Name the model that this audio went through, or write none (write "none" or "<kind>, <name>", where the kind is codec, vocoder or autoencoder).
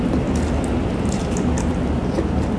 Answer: none